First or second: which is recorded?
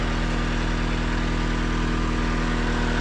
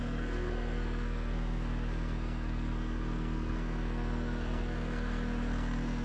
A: first